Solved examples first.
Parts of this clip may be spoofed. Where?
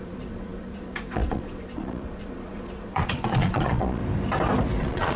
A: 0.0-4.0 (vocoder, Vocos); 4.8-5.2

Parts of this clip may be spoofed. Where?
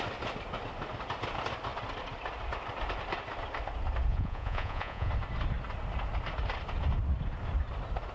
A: 4.1-5.1 (vocoder, Vocos)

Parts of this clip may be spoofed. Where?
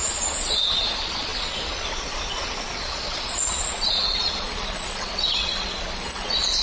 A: 0.0-6.6 (vocoder, Vocos)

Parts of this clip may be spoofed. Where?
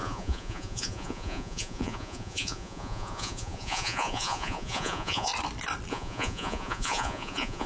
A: 0.0-5.3 (vocoder, Vocos); 5.9-7.7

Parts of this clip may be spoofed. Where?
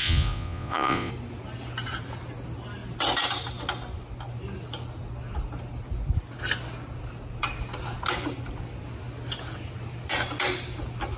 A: 0.0-1.1 (vocoder, Vocos)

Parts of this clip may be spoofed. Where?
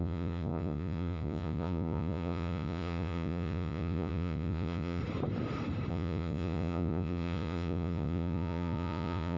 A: 0.0-5.0 (vocoder, Vocos); 5.9-9.4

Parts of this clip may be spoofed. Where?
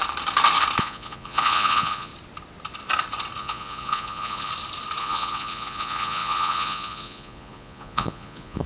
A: 0.8-2.1 (vocoder, Vocos); 3.4-4.5; 5.0-8.7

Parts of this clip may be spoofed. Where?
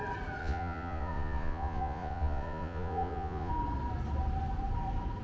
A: 0.4-3.5 (vocoder, Vocos)